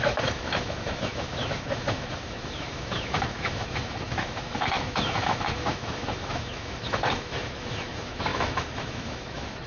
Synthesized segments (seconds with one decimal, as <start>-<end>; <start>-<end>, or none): 0.0-9.7